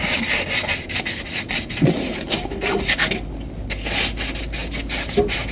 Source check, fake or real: real